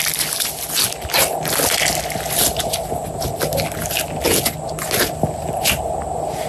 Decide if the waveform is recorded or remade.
recorded